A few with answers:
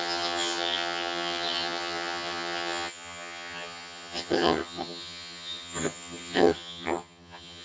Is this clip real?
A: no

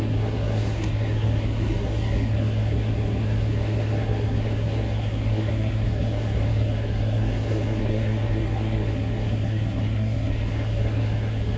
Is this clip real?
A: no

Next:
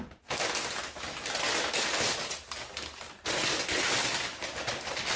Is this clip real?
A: yes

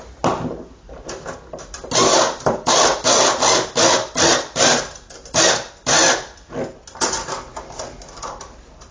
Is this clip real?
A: yes